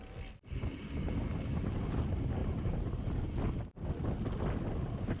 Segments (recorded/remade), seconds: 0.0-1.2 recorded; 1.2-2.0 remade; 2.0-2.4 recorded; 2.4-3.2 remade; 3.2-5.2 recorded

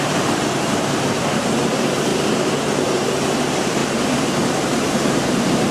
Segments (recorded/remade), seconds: 0.0-2.1 remade; 2.1-2.8 recorded; 2.8-3.8 remade; 3.8-4.6 recorded; 4.6-5.7 remade

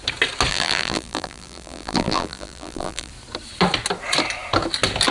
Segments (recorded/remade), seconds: 0.0-0.5 recorded; 0.5-3.1 remade; 3.1-5.1 recorded

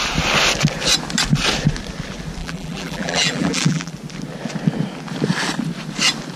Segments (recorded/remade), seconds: 0.0-2.4 recorded; 2.4-3.9 remade; 3.9-6.4 recorded

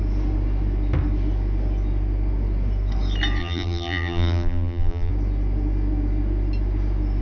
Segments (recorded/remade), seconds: 0.0-3.4 recorded; 3.4-5.1 remade; 5.1-7.2 recorded

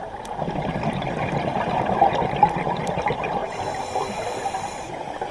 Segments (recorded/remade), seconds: 0.0-5.3 recorded